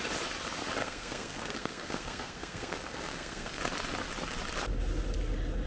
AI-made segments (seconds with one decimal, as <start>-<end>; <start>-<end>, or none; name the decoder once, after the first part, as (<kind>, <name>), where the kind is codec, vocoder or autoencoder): 0.8-3.6 (codec, SNAC)